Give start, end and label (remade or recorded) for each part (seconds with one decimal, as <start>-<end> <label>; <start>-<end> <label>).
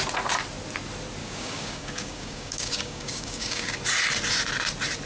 0.0-1.2 recorded; 1.2-3.8 remade; 3.8-5.1 recorded